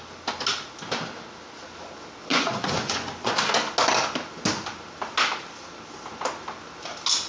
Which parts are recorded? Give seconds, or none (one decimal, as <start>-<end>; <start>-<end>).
0.0-2.3; 3.3-7.3